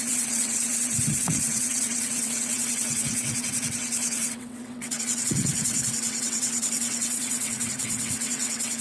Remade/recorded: remade